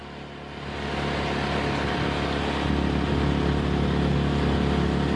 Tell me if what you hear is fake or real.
real